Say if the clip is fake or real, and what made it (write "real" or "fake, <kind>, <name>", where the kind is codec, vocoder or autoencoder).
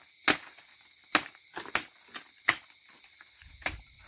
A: real